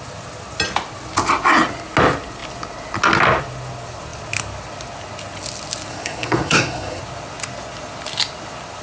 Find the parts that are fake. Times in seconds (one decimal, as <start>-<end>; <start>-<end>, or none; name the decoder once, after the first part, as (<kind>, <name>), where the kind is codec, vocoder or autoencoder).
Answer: 5.9-7.0 (codec, SNAC)